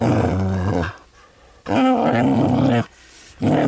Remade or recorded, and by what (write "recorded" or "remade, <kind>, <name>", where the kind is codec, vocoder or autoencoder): recorded